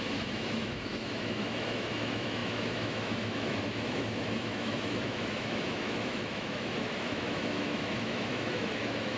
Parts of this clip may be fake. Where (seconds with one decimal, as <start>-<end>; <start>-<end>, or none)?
0.0-9.2